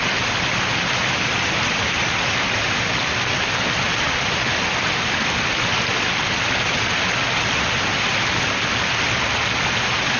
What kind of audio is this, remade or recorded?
recorded